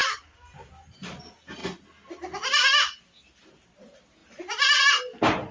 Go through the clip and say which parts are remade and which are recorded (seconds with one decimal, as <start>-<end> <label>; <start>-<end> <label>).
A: 0.0-5.5 recorded